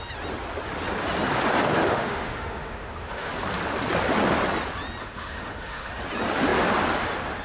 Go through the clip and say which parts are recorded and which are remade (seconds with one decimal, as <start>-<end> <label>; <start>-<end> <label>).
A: 0.0-1.8 recorded; 1.8-3.3 remade; 3.3-5.0 recorded; 5.0-5.9 remade; 5.9-7.4 recorded